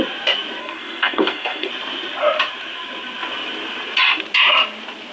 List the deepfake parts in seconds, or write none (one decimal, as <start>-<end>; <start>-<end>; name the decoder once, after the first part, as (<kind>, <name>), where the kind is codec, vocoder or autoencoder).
0.6-1.7 (codec, SNAC)